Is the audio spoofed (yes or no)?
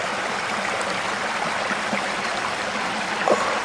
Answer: no